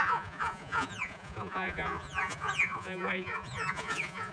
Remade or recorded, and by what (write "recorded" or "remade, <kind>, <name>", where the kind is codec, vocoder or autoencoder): remade, vocoder, Vocos